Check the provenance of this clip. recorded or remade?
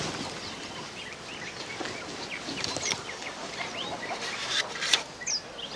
recorded